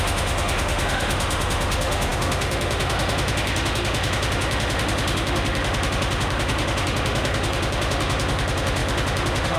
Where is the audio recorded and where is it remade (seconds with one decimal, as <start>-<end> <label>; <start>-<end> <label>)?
0.0-9.6 remade